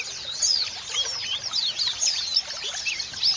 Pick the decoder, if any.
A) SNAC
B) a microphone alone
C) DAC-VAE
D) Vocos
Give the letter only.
B